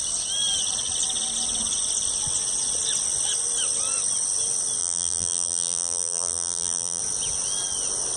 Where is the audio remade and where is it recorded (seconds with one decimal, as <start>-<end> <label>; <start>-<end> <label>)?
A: 0.0-4.8 recorded; 4.8-7.0 remade; 7.0-8.2 recorded